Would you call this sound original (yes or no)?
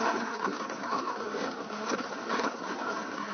no